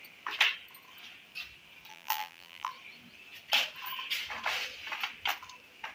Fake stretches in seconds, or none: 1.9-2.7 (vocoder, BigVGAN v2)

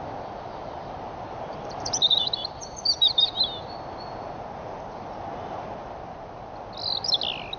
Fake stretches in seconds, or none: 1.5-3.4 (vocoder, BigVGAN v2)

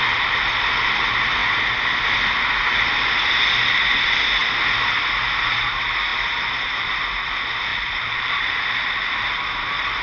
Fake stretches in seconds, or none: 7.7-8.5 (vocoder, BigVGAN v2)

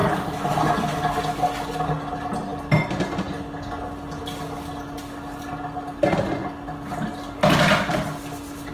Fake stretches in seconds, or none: none

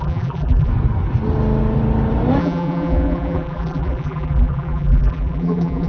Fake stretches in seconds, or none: 0.0-0.7 (vocoder, BigVGAN v2); 2.4-5.9

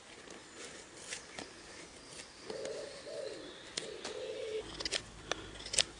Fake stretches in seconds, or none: none